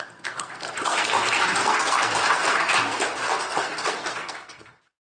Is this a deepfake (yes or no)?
yes